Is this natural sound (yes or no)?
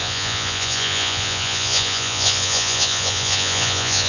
no